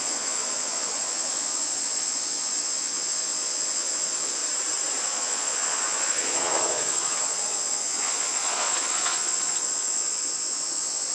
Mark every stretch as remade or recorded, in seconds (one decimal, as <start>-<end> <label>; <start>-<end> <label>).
0.0-4.4 remade; 4.4-5.0 recorded; 5.0-11.1 remade